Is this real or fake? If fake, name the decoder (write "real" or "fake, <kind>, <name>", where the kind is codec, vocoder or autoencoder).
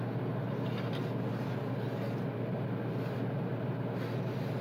real